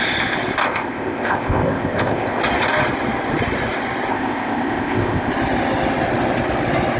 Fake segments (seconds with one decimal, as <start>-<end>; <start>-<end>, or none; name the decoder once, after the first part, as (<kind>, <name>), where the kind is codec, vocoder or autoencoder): 0.6-2.4 (codec, ZipCodec); 4.1-5.3